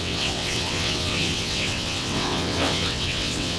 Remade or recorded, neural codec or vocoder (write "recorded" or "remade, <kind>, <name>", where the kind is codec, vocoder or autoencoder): remade, vocoder, WaveNeXt